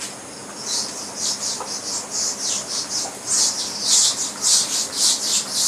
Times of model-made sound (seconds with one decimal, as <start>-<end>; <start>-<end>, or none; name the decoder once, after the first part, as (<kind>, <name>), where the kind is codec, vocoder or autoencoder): none